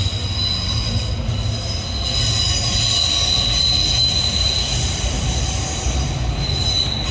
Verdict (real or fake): real